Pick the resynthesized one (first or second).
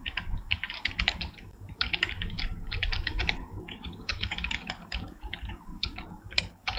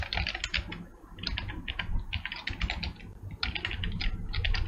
first